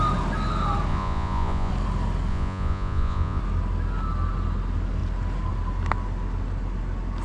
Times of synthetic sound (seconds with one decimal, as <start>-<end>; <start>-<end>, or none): 0.9-1.7; 2.3-3.4